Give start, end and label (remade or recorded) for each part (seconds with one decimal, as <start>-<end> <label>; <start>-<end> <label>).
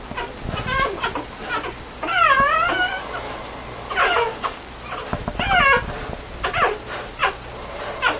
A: 0.0-4.0 recorded; 4.0-4.7 remade; 4.7-8.2 recorded